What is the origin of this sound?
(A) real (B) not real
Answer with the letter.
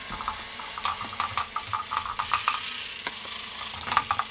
A